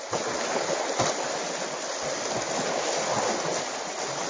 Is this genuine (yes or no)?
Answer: yes